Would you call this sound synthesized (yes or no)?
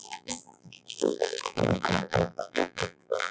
yes